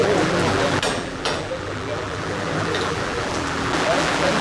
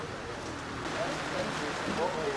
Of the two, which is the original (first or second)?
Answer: second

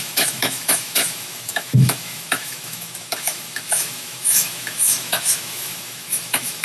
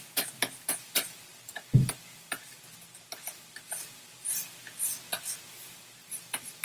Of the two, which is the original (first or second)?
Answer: second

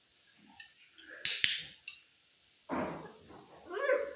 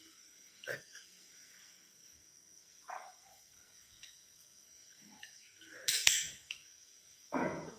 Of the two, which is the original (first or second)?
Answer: first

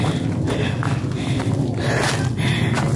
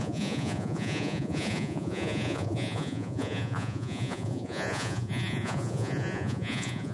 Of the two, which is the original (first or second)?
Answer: first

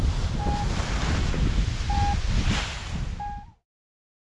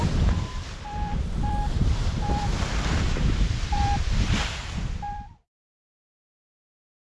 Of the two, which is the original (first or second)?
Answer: first